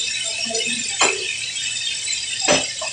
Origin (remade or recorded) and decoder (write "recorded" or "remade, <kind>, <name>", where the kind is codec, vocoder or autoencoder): recorded